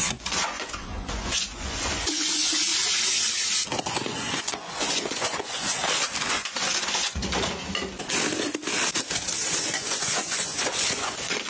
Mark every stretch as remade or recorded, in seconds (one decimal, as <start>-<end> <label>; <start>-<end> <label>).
0.0-2.7 remade; 2.7-3.8 recorded; 3.8-5.8 remade; 5.8-6.3 recorded; 6.3-7.2 remade; 7.2-9.6 recorded; 9.6-11.5 remade